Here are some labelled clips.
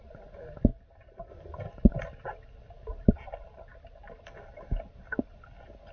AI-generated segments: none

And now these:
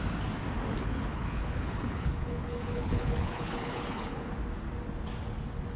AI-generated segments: 0.8-4.3 (codec, HILCodec)

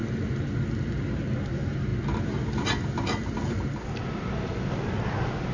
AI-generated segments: none

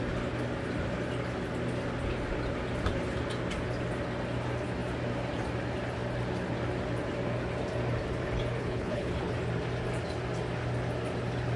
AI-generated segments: 8.6-9.3 (codec, HILCodec)

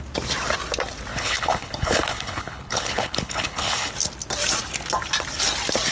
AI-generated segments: 1.1-3.9 (codec, HILCodec)

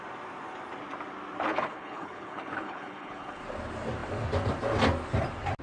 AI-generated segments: 1.5-3.4 (codec, HILCodec)

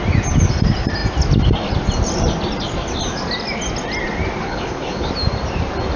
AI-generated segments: 4.4-5.1 (codec, HILCodec)